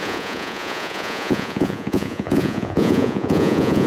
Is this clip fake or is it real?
fake